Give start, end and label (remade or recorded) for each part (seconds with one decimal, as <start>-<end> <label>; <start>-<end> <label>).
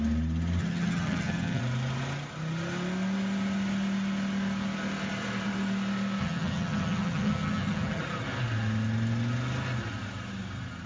0.0-0.6 recorded; 0.6-1.6 remade; 1.6-6.2 recorded; 6.2-8.0 remade; 8.0-10.9 recorded